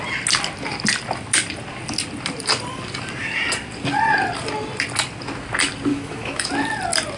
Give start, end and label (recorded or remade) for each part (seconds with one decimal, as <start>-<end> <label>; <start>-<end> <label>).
0.0-5.9 recorded; 5.9-6.5 remade; 6.5-7.2 recorded